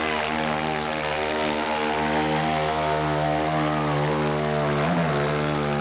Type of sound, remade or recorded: recorded